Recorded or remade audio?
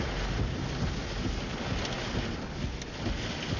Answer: recorded